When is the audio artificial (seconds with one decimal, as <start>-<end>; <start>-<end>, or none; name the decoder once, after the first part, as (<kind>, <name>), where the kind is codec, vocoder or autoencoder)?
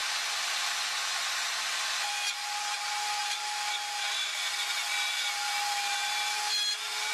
3.2-3.7 (vocoder, BigVGAN v2)